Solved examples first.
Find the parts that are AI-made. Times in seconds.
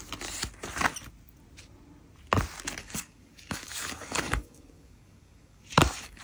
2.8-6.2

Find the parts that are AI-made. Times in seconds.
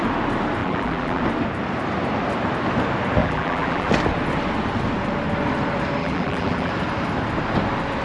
0.6-1.2; 3.2-3.9; 6.0-6.7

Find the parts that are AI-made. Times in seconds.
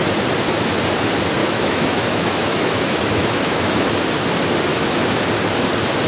1.4-3.9; 4.7-5.2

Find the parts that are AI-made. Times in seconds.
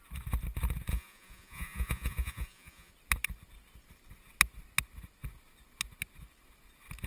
0.9-2.9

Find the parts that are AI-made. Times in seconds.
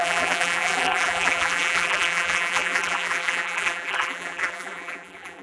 0.0-5.4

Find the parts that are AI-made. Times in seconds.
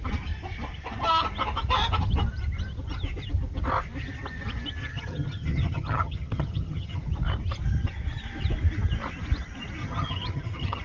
4.8-7.0; 9.8-10.8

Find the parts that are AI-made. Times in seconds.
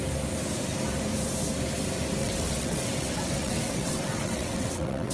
2.2-5.1